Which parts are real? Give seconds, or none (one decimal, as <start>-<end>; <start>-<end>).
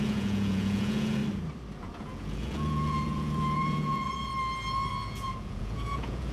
1.2-1.8; 4.3-4.9